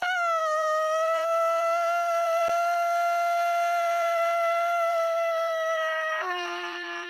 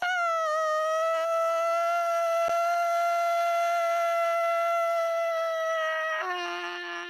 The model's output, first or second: first